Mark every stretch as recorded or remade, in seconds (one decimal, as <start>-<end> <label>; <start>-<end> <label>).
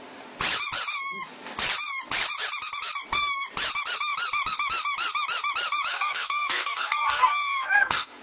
0.0-5.9 recorded; 5.9-8.2 remade